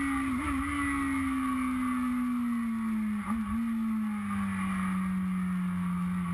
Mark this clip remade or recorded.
recorded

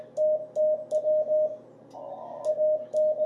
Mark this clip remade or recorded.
recorded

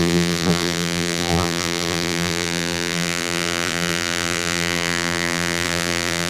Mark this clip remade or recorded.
remade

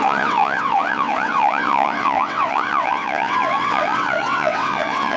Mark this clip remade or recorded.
remade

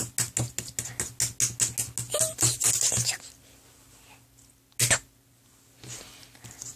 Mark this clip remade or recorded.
recorded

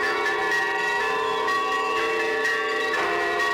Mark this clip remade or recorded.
remade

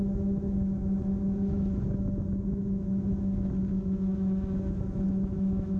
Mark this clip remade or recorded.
remade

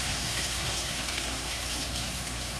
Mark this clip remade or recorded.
remade